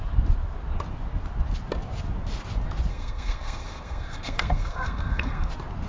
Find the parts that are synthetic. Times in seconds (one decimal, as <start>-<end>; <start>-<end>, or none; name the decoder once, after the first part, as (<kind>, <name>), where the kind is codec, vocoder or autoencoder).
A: 2.9-5.5 (codec, SNAC)